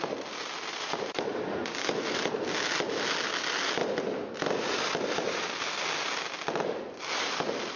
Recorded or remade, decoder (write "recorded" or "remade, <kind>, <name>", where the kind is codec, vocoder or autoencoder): recorded